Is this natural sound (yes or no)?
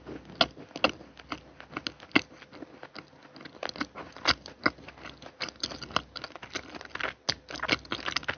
yes